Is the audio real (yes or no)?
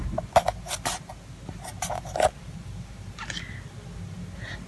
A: yes